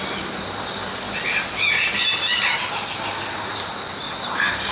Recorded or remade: recorded